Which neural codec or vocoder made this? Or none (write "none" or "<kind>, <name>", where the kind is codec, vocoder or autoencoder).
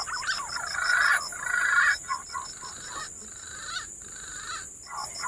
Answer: none